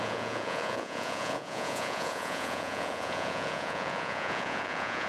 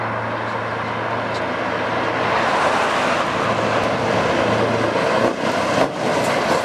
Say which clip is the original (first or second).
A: second